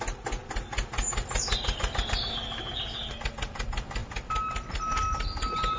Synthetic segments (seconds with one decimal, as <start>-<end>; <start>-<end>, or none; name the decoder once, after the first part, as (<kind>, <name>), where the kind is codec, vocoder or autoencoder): none